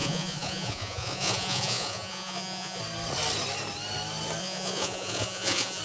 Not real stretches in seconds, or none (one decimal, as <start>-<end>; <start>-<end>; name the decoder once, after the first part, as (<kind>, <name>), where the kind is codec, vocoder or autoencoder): 0.0-2.8 (vocoder, Vocos); 4.4-5.8